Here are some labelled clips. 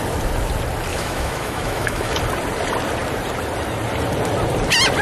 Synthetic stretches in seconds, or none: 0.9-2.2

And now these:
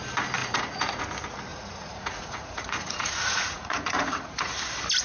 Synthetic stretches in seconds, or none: 0.4-1.0; 1.5-4.5